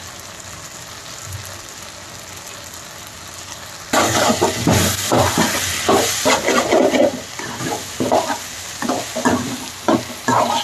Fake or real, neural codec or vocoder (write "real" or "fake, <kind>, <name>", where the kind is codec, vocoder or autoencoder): real